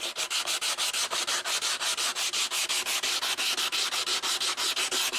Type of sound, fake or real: real